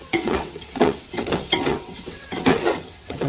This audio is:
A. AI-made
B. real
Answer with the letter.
A